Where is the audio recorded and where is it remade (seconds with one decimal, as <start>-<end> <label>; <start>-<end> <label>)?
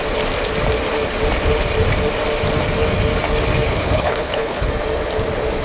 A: 0.0-3.7 recorded; 3.7-4.7 remade; 4.7-5.6 recorded